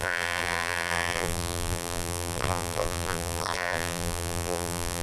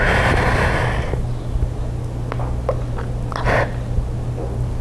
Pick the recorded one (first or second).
second